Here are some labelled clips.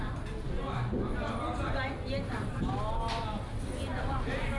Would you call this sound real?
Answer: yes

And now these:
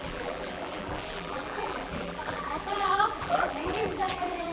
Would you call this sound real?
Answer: no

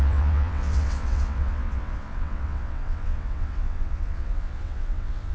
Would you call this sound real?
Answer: no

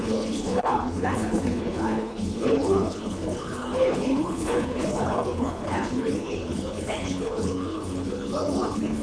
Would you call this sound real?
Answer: no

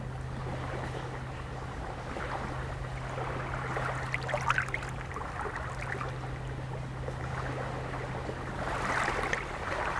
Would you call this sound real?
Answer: yes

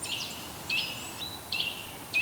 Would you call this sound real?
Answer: yes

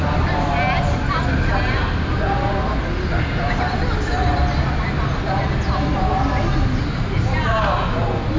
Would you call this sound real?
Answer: yes